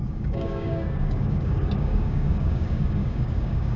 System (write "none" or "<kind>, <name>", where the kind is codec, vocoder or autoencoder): codec, DAC